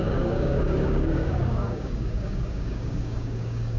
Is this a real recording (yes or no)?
no